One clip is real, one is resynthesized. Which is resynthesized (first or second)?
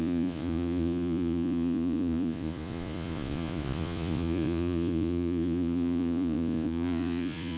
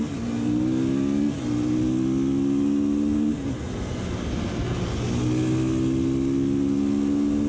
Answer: first